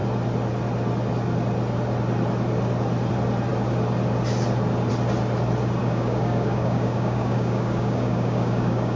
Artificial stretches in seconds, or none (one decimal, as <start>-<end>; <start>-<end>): 5.8-9.0